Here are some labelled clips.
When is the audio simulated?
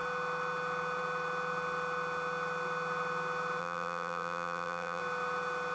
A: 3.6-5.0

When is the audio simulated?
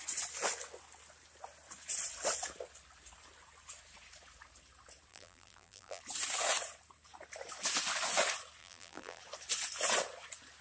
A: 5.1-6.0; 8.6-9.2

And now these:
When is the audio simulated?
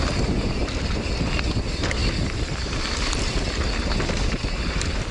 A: 2.0-5.1